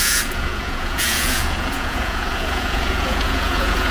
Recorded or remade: remade